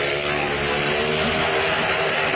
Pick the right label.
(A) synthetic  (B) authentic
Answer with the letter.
B